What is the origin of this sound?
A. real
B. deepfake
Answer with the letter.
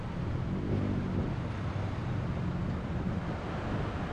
A